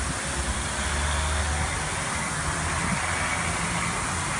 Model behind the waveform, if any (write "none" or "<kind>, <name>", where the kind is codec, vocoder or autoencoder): none